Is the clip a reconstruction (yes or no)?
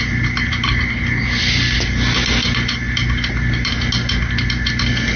no